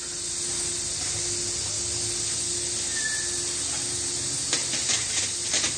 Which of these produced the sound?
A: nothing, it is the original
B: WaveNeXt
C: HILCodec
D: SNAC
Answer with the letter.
A